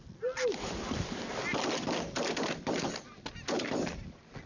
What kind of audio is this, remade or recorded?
recorded